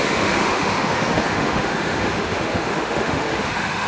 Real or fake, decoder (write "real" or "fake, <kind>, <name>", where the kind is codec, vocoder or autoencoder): fake, autoencoder, DAC-VAE